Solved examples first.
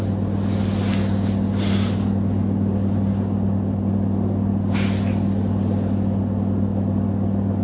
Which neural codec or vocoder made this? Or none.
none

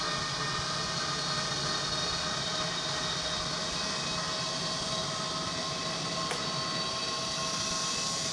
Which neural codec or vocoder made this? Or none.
none